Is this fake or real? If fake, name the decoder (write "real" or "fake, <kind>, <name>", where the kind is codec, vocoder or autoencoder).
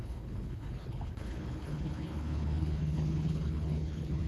fake, codec, HILCodec